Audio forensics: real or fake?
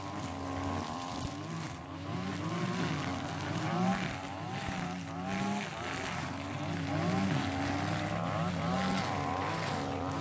real